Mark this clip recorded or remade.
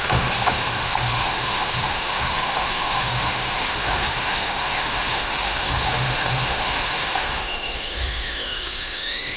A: remade